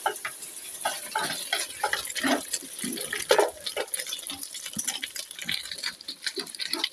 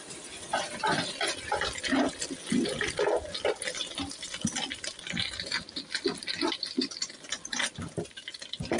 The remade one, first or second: first